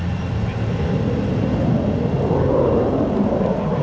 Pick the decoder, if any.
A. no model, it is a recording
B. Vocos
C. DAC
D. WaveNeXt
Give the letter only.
A